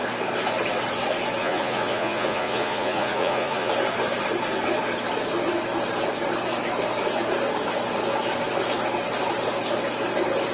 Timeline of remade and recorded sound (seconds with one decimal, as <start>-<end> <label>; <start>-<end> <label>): 0.0-1.4 recorded; 1.4-3.7 remade; 3.7-10.5 recorded